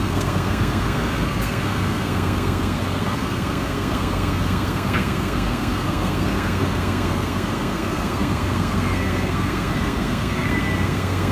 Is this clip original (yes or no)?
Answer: no